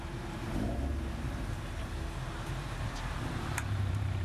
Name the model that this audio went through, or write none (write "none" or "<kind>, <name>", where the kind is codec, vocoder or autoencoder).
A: vocoder, BigVGAN v2